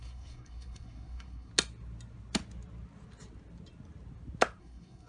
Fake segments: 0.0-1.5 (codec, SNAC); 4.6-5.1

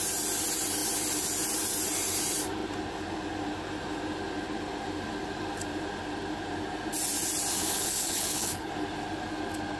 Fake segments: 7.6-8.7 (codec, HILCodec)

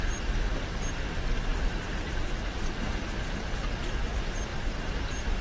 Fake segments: 4.5-5.0 (vocoder, BigVGAN v2)

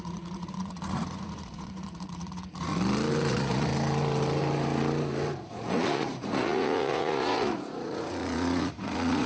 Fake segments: 0.0-2.7 (vocoder, Vocos); 3.3-3.7; 5.4-9.3

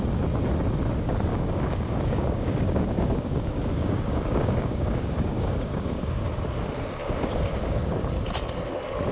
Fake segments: 1.3-6.2 (codec, DAC); 7.0-8.1

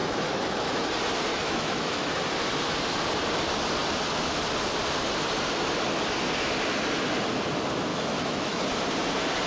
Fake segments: 0.0-0.9 (autoencoder, DAC-VAE); 1.3-2.1; 7.9-8.6